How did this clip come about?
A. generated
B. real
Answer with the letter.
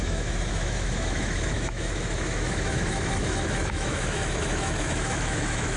A